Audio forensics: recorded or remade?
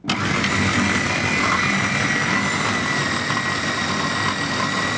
recorded